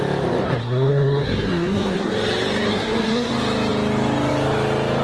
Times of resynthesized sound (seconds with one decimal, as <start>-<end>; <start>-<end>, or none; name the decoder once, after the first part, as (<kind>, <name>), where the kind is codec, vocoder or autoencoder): 0.6-2.1 (codec, SNAC); 2.7-3.3